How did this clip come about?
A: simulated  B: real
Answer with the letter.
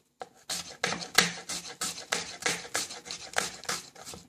B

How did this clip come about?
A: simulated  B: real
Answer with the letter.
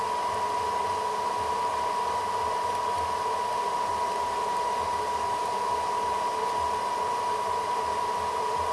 B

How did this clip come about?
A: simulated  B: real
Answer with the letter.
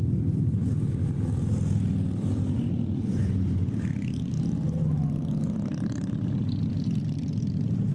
A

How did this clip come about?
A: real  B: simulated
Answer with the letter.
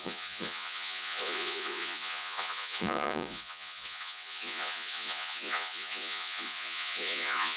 B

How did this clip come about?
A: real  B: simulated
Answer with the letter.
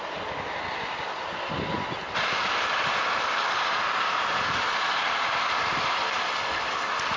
A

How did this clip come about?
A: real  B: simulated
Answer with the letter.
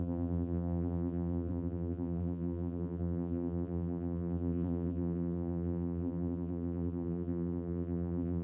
B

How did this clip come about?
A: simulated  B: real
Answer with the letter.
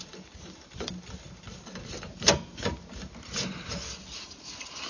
B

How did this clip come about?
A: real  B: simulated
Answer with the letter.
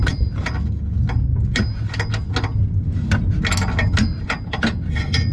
A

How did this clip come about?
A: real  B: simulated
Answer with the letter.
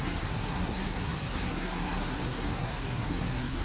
B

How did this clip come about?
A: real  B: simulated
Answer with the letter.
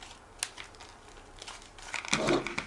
A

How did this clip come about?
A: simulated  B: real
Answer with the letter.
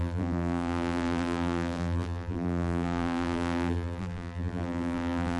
A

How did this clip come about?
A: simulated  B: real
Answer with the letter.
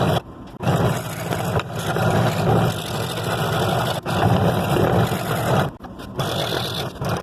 B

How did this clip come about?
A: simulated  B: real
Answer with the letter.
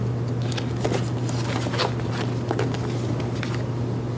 B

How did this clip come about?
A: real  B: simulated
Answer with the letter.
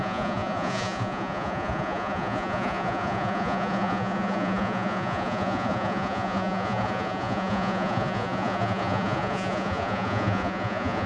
B